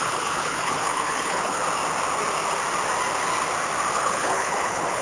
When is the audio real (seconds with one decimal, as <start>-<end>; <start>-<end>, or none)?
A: 1.6-3.9